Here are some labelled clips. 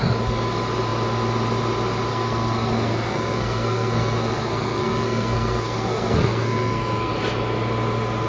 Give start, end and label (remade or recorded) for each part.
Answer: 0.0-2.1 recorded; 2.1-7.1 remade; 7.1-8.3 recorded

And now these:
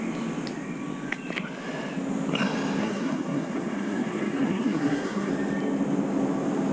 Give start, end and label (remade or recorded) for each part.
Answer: 0.0-2.8 recorded; 2.8-5.3 remade; 5.3-6.7 recorded